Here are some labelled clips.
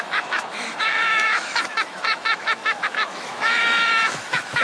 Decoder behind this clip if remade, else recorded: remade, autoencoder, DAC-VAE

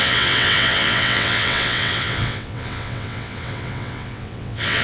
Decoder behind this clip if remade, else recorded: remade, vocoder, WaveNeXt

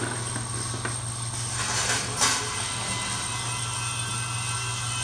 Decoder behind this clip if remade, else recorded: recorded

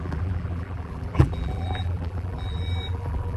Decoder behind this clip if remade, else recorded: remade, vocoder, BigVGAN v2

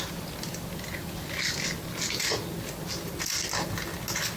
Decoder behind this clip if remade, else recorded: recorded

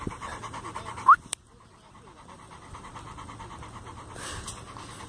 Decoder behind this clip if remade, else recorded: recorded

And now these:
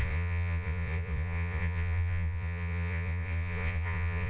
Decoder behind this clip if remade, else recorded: remade, vocoder, Vocos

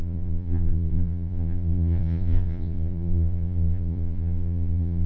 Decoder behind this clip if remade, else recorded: remade, vocoder, Vocos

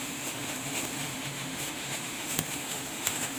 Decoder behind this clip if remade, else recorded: remade, autoencoder, DAC-VAE